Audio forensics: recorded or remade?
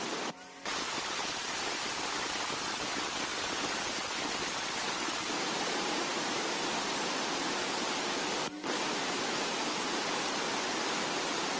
recorded